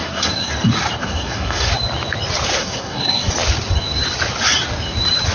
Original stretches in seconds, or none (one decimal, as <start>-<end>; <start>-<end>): 0.5-1.0; 1.7-2.6; 3.3-5.3

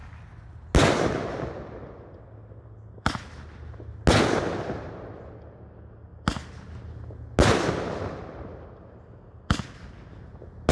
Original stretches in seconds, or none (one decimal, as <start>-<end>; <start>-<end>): 0.0-10.7

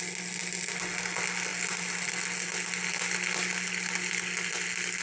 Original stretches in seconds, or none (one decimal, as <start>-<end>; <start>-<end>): 0.0-5.0